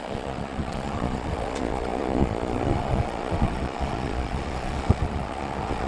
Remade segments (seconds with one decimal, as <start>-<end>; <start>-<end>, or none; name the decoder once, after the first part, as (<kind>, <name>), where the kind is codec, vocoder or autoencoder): 0.0-5.9 (vocoder, Vocos)